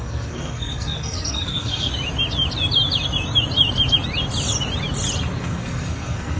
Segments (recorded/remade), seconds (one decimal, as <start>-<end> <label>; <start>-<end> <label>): 0.0-1.9 remade; 1.9-5.4 recorded; 5.4-6.4 remade